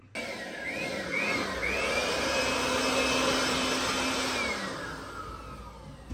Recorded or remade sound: recorded